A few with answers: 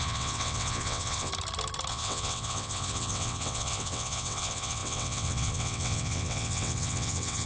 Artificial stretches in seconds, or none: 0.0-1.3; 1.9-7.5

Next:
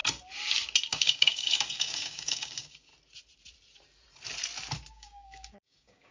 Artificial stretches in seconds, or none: 0.9-2.9; 4.9-6.1

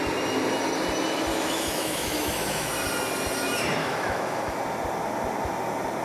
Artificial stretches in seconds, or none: 1.3-2.7; 3.8-4.6

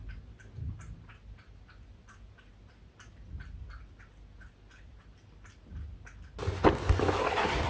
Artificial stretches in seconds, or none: none

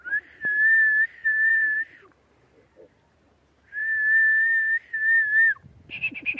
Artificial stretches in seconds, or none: 1.2-1.9